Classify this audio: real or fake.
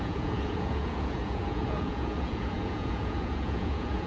fake